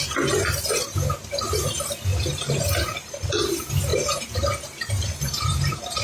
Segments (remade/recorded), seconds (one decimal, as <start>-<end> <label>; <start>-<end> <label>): 0.0-3.9 recorded; 3.9-6.0 remade